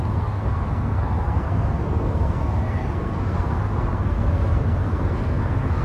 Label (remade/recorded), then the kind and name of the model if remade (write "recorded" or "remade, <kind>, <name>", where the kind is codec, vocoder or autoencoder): remade, codec, SNAC